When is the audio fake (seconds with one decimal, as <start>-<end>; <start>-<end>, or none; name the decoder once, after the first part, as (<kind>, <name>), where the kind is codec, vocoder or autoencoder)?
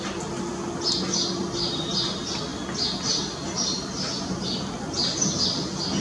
none